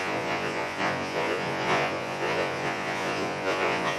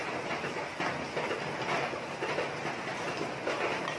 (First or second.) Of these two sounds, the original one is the second